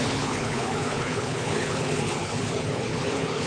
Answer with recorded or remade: remade